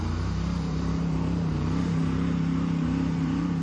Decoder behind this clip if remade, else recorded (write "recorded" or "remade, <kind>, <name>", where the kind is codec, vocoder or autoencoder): remade, vocoder, BigVGAN v2